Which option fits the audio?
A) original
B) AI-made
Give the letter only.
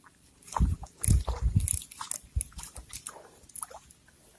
A